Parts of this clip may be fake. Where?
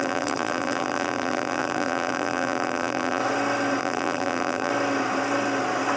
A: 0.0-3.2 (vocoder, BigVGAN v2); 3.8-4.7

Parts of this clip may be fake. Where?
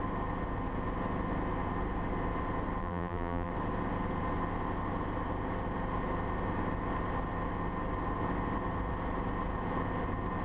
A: 2.8-3.5 (vocoder, BigVGAN v2)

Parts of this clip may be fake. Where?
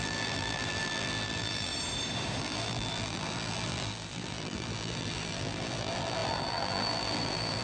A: 0.0-1.7 (vocoder, BigVGAN v2); 2.4-7.6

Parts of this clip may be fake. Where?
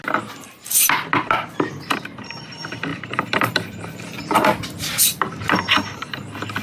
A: 2.9-5.4 (vocoder, BigVGAN v2)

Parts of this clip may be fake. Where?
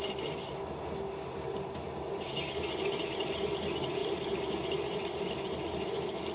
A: none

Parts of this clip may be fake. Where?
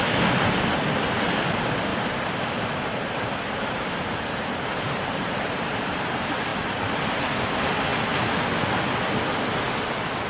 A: 1.9-6.0 (vocoder, BigVGAN v2)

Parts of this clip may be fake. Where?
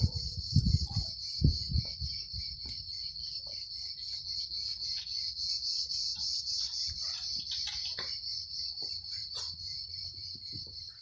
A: 0.0-2.9 (vocoder, BigVGAN v2); 5.2-11.0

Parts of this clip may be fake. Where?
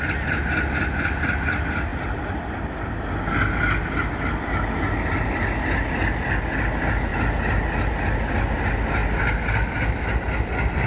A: none